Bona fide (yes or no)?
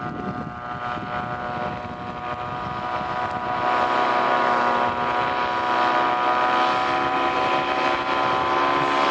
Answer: yes